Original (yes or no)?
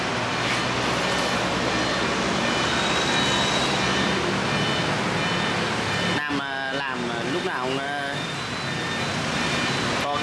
yes